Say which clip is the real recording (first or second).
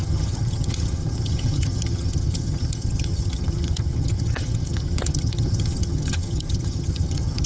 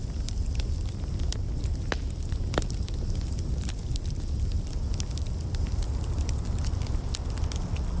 second